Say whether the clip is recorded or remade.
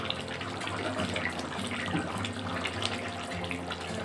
recorded